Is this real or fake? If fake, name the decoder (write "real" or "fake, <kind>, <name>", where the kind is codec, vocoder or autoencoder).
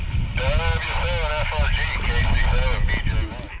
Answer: real